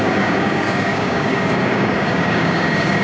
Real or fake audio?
fake